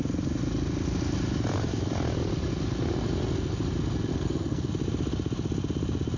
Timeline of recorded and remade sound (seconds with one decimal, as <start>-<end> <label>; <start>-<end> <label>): 0.0-4.1 recorded; 4.1-4.7 remade; 4.7-6.2 recorded